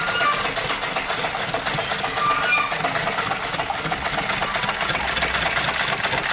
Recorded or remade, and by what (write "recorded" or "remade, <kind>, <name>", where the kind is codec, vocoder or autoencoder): recorded